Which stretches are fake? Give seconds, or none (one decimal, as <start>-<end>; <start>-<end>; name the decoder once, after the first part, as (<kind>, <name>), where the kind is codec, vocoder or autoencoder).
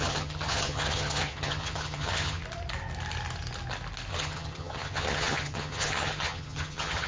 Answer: 0.0-2.4 (vocoder, HiFi-GAN); 4.1-7.1